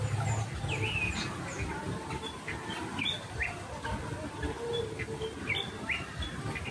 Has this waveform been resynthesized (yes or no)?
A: no